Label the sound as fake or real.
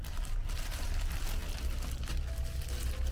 real